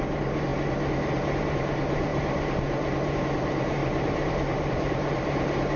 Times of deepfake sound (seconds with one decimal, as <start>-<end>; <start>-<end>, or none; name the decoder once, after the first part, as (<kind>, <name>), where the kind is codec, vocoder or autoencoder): 0.0-0.5 (vocoder, BigVGAN v2); 1.4-5.8